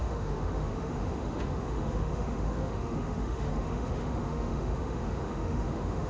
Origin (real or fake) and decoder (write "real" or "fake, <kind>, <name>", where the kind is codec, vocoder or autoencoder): fake, autoencoder, DAC-VAE